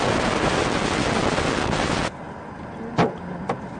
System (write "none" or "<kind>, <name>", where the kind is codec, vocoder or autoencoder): none